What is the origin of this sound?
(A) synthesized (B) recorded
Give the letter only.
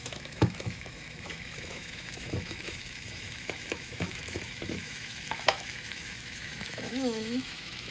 A